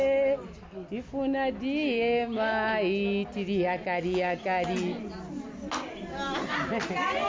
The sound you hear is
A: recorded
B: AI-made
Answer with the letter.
A